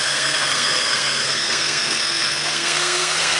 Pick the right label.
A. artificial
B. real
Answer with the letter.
A